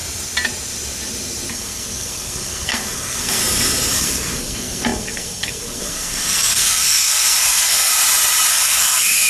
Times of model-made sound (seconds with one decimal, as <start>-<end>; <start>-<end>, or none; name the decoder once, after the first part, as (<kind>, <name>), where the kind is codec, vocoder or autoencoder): 1.5-3.4 (codec, SNAC); 3.9-7.9; 8.5-9.3